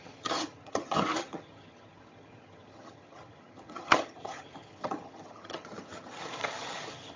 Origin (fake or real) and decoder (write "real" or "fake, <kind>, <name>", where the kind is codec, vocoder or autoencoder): fake, vocoder, HiFi-GAN